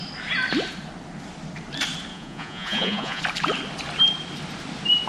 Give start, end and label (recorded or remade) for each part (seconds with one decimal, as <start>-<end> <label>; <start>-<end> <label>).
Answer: 0.0-2.1 recorded; 2.1-3.2 remade; 3.2-5.1 recorded